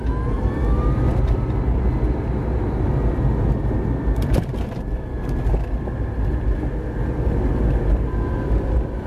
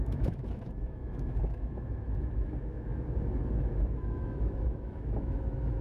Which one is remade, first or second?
second